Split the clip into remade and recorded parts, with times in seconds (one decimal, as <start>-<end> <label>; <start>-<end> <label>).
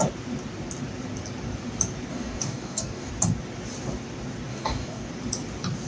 0.0-2.1 recorded; 2.1-3.1 remade; 3.1-4.5 recorded; 4.5-5.1 remade; 5.1-5.9 recorded